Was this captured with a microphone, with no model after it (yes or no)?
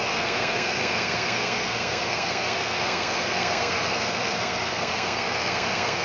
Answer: no